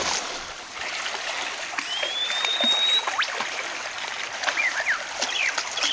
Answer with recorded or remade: recorded